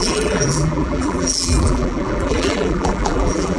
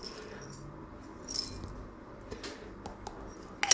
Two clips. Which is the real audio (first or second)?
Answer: second